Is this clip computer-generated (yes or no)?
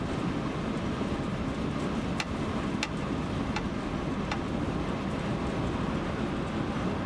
no